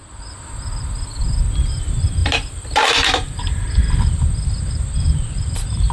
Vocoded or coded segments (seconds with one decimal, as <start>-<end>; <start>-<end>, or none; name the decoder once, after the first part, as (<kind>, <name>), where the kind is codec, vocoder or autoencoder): 2.2-5.9 (vocoder, BigVGAN v2)